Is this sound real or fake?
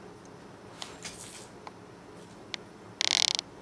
real